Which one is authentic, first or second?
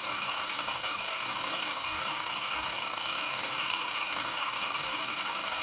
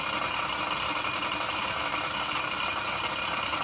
second